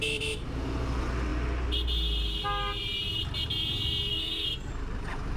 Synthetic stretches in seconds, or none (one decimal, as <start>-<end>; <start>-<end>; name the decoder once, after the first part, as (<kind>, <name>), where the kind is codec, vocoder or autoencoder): 4.1-4.7 (codec, SNAC)